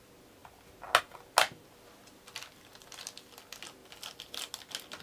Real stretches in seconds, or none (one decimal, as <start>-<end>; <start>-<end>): 0.0-2.7; 3.4-5.0